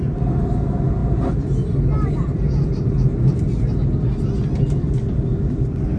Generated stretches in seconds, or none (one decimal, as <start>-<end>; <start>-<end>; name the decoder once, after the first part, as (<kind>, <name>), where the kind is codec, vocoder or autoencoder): none